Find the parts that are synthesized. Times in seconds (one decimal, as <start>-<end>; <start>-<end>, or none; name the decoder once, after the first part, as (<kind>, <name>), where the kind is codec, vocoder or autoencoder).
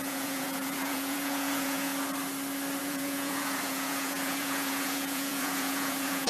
0.0-1.9 (vocoder, Vocos); 2.8-6.3